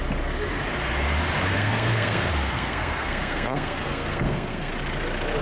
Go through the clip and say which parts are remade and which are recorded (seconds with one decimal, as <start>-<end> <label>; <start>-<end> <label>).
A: 0.0-1.5 recorded; 1.5-4.7 remade; 4.7-5.4 recorded